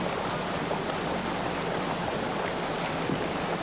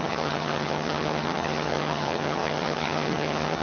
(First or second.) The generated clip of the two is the second